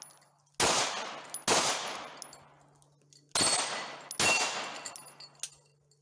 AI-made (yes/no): no